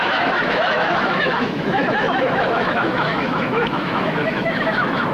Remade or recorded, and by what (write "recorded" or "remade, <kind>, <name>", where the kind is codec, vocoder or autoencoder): remade, autoencoder, DAC-VAE